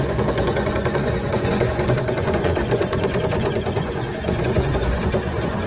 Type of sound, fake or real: fake